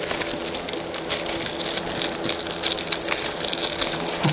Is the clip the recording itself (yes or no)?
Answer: yes